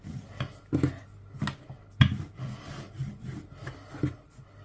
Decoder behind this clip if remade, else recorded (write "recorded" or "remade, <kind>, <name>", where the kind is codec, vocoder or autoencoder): recorded